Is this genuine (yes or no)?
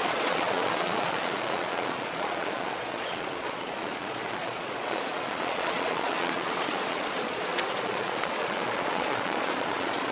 no